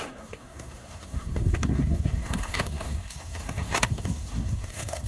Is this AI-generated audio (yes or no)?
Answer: yes